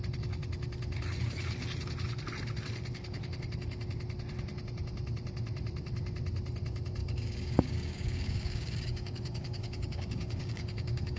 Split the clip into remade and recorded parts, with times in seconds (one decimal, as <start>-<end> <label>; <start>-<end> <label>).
0.0-7.0 recorded; 7.0-11.2 remade